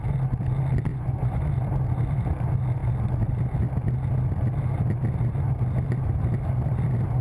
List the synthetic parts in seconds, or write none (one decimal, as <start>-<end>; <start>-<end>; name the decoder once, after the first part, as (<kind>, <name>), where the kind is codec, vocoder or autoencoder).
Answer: 0.9-1.5 (vocoder, Vocos)